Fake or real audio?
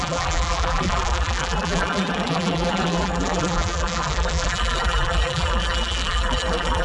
fake